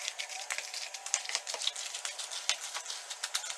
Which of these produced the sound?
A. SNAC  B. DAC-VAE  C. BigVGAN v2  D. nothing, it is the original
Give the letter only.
D